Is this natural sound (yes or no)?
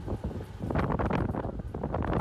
yes